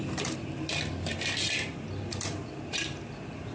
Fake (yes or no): yes